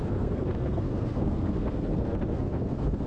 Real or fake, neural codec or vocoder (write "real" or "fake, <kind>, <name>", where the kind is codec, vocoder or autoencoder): fake, codec, SNAC